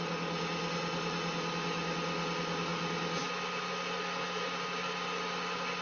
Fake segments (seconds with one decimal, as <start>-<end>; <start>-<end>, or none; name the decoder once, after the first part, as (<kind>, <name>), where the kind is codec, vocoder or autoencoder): none